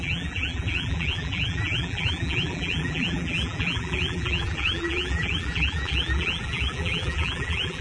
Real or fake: fake